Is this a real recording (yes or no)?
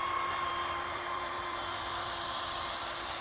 no